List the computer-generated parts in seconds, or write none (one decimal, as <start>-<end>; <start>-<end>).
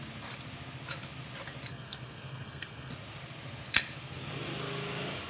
1.7-2.9